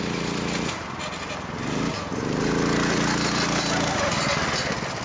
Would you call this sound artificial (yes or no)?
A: no